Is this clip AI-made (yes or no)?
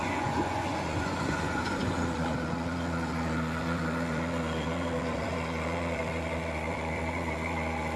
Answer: yes